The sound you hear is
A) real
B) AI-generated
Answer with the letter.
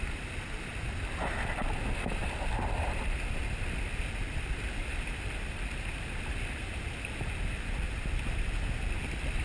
A